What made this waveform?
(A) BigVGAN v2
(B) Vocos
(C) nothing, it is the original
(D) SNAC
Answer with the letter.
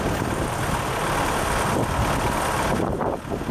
C